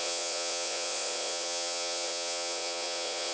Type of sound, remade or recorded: remade